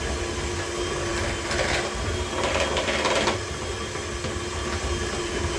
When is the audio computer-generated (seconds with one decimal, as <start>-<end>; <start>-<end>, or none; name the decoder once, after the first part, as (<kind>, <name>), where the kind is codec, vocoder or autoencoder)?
none